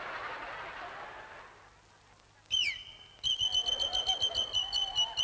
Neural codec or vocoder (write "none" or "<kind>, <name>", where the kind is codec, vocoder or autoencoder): none